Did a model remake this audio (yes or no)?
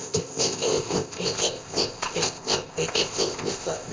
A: yes